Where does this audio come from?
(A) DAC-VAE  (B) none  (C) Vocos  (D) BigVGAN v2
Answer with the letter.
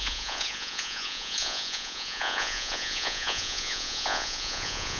C